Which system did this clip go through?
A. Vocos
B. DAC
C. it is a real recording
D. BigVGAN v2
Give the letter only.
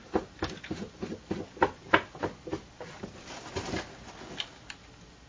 C